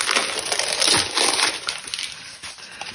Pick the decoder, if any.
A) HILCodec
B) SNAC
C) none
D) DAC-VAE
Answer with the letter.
C